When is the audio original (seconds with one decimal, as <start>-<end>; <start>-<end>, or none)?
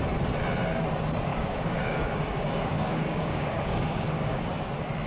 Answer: 0.0-1.3; 4.4-5.1